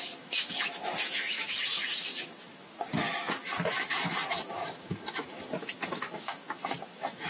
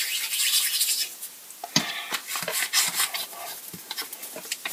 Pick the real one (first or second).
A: second